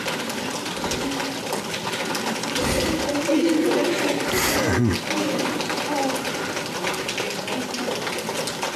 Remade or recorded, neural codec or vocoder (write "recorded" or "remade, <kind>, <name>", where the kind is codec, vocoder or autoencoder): recorded